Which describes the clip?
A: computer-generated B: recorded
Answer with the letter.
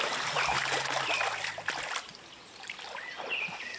B